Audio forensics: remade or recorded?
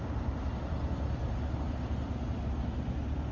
recorded